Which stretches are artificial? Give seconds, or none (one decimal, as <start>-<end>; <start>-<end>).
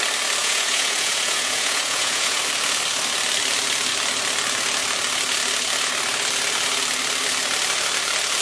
0.4-2.4